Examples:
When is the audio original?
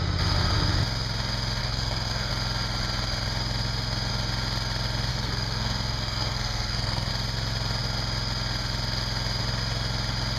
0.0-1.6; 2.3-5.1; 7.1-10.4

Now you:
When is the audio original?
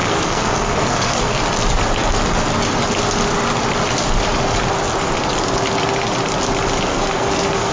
1.4-6.9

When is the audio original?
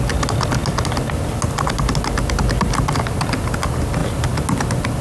0.0-5.0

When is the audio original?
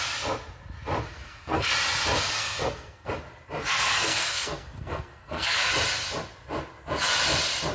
0.0-1.1; 1.7-2.2; 3.1-3.6; 5.7-7.7